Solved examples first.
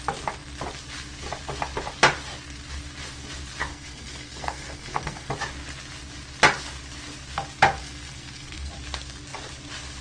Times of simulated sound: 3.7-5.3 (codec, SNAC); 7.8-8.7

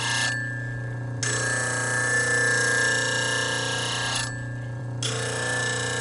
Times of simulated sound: none

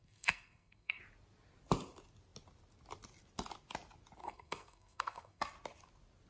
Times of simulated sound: 0.0-1.0 (codec, SNAC); 4.2-5.4